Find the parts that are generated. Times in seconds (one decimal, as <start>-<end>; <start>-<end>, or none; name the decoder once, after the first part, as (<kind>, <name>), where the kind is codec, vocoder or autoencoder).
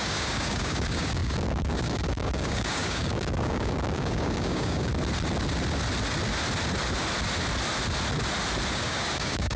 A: 0.0-4.9 (codec, DAC); 8.7-9.6